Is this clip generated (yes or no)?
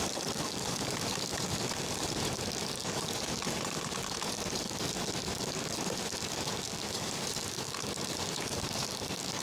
yes